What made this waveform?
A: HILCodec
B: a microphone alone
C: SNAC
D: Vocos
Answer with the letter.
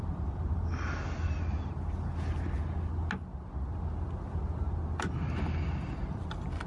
B